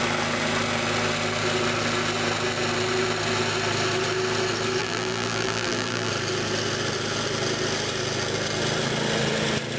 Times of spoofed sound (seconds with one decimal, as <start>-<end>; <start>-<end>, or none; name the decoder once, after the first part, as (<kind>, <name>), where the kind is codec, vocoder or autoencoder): 4.8-6.1 (vocoder, BigVGAN v2)